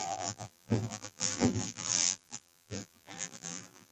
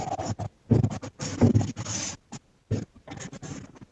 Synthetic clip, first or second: first